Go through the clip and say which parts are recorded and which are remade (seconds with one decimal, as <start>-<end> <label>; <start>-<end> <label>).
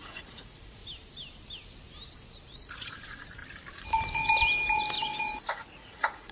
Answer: 0.0-0.8 remade; 0.8-2.5 recorded; 2.5-3.4 remade; 3.4-5.5 recorded; 5.5-6.3 remade